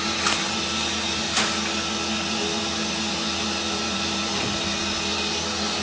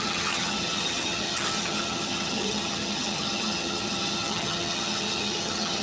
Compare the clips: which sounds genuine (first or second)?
first